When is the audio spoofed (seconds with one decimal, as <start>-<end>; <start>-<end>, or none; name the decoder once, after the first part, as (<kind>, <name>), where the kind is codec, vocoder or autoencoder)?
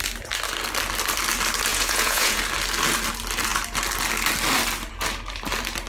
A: 1.7-2.4 (vocoder, Vocos)